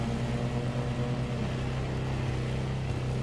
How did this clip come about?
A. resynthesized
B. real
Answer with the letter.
B